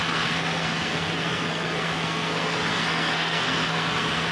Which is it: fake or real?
fake